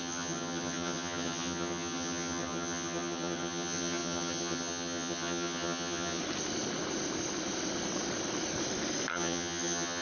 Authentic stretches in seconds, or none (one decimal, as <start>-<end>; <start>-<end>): 6.2-9.1